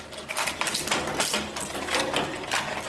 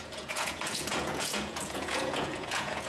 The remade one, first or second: second